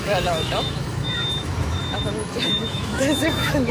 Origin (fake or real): fake